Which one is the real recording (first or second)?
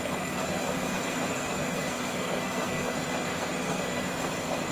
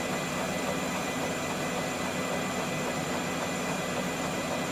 second